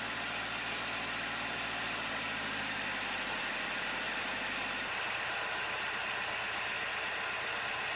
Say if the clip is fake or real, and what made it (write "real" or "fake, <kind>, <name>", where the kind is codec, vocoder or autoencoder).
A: fake, vocoder, BigVGAN v2